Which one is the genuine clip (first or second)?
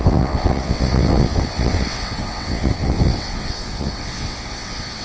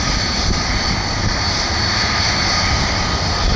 second